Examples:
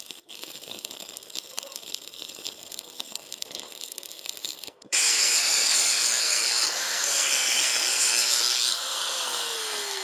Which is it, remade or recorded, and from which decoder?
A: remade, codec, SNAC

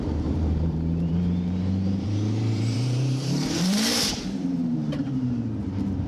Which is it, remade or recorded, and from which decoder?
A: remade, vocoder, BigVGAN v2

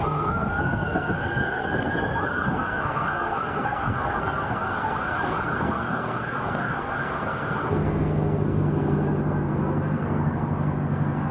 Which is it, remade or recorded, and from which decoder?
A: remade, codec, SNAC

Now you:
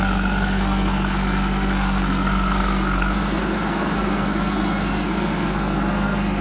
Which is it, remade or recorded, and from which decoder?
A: remade, codec, SNAC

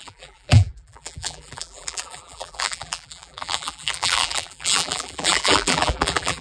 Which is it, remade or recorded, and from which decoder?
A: remade, vocoder, BigVGAN v2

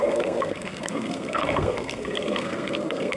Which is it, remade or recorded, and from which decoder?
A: remade, codec, SNAC